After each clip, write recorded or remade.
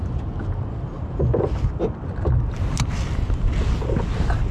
recorded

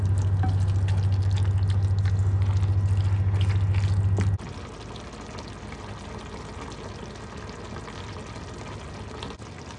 recorded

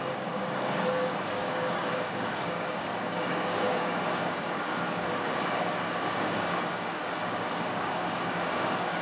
remade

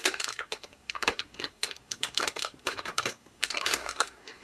remade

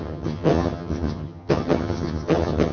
remade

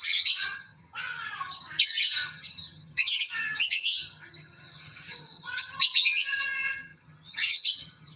remade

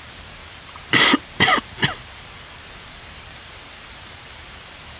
remade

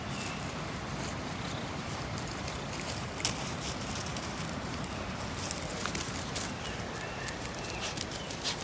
recorded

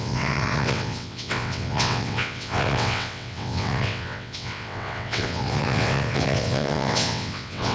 remade